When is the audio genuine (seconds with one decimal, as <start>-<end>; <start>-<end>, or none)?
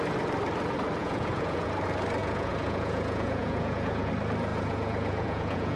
0.0-1.0; 1.7-2.2; 4.1-4.5